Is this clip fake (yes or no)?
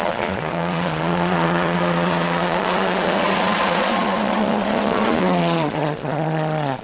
yes